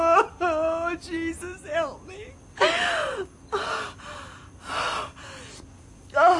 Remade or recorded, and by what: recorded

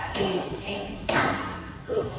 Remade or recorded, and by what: remade, codec, SNAC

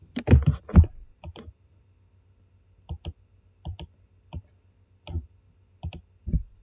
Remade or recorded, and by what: recorded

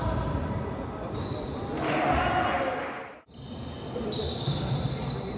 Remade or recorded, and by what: recorded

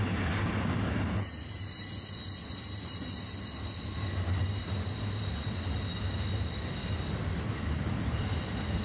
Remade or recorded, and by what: recorded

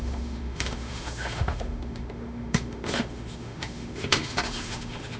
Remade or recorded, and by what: remade, autoencoder, DAC-VAE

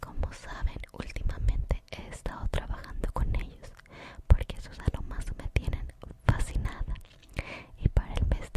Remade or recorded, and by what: recorded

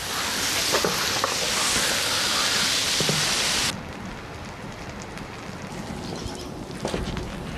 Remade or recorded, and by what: recorded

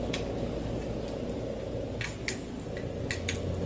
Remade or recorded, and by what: recorded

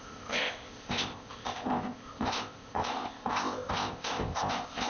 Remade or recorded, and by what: remade, codec, ZipCodec